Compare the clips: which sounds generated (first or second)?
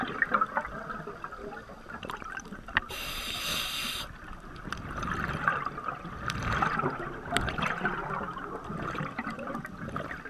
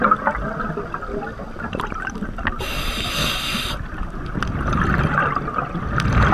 first